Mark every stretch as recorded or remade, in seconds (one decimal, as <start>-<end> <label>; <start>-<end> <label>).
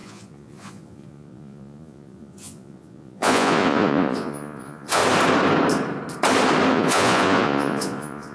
0.0-5.0 remade; 5.0-6.7 recorded; 6.7-8.3 remade